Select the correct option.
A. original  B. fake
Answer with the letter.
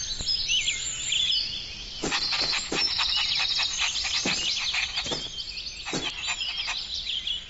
A